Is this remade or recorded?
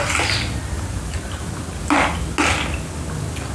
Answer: recorded